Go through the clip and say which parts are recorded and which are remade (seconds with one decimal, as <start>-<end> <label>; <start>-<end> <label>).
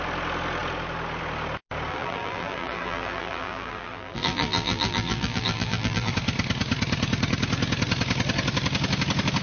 0.0-1.9 recorded; 1.9-6.1 remade; 6.1-9.4 recorded